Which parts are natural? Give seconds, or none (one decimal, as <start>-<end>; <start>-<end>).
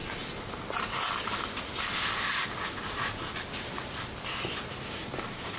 0.0-5.6